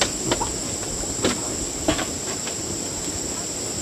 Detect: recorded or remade recorded